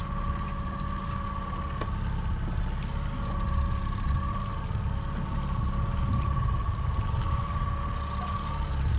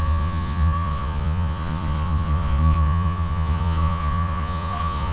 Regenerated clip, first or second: second